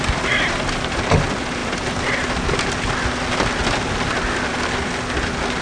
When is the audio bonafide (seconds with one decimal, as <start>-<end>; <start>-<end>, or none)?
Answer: 0.0-5.6